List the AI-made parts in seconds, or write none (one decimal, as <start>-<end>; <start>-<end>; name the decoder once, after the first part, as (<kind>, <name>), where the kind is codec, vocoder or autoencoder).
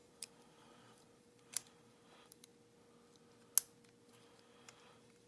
0.0-2.5 (vocoder, BigVGAN v2); 4.0-5.3